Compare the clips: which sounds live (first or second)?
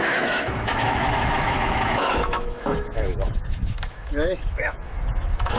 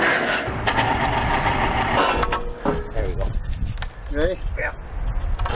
second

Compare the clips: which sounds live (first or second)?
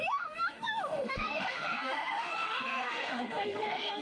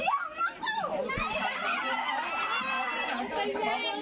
second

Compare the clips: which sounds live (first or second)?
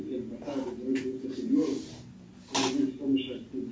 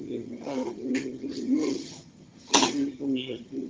first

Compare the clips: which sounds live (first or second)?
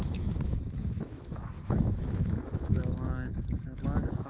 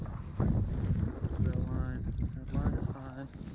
second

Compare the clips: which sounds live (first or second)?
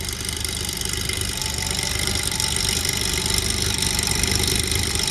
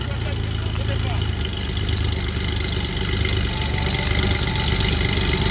second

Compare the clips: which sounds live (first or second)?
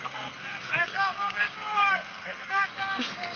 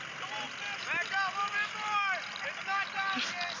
second